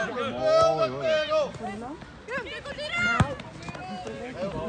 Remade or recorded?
recorded